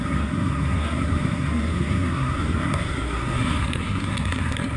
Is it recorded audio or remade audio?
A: remade